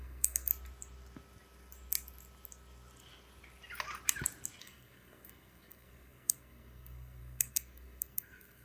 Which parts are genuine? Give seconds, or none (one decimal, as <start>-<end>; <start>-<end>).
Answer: 0.5-4.6